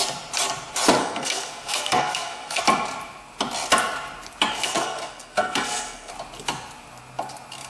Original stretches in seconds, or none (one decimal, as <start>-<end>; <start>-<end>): 0.0-1.0; 2.6-4.5; 6.1-7.7